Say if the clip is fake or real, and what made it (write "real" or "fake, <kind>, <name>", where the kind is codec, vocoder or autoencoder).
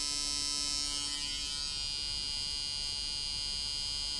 real